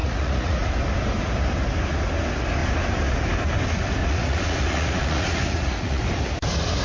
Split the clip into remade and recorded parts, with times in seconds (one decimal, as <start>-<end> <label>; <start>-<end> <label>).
0.0-0.6 remade; 0.6-4.0 recorded; 4.0-6.0 remade; 6.0-6.8 recorded